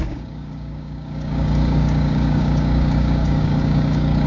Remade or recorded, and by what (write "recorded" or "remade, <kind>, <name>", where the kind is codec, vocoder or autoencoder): remade, codec, DAC